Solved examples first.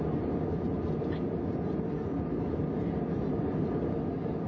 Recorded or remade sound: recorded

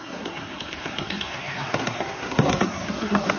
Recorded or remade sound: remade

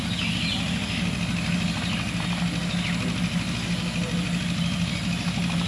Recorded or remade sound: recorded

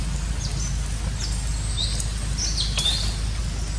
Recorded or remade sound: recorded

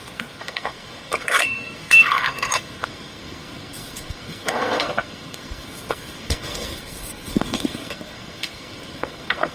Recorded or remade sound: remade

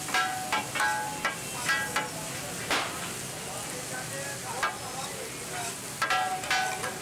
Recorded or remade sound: recorded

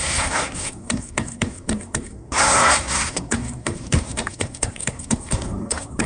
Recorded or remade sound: remade